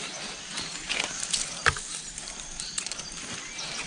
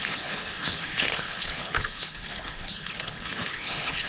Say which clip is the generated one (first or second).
second